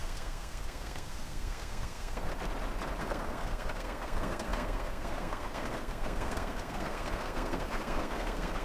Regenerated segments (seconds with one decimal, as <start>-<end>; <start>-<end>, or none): 0.0-2.3; 3.0-8.6